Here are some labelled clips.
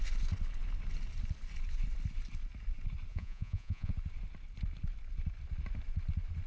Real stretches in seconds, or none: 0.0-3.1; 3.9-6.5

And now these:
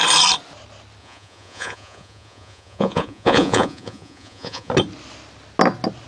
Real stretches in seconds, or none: 0.0-1.0; 4.7-6.1

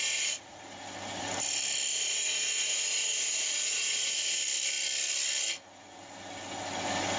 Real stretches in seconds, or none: 0.6-1.9; 4.4-7.2

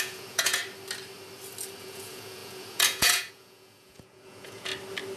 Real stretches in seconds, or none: 0.6-1.8; 4.7-5.2

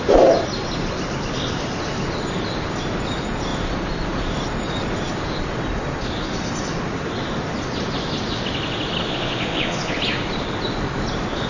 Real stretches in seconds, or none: 0.0-9.1; 10.0-11.5

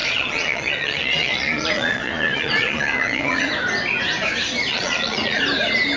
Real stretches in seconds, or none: 3.5-4.7; 5.4-6.0

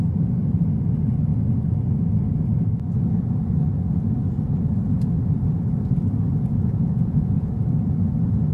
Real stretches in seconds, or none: 0.0-6.5; 7.5-8.5

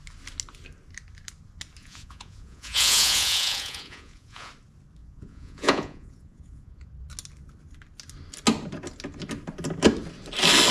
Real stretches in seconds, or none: 0.0-1.8; 4.5-5.0; 6.9-10.7